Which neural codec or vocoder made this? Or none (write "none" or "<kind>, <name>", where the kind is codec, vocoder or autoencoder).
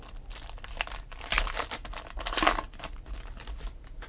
none